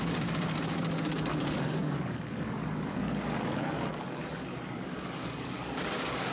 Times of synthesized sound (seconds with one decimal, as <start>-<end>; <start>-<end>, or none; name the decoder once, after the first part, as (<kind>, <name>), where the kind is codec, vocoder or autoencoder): 0.0-6.3 (codec, DAC)